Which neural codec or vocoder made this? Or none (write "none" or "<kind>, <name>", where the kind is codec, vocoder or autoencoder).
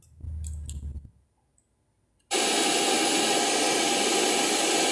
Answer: none